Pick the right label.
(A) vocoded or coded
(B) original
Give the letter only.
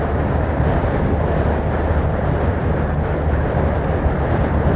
A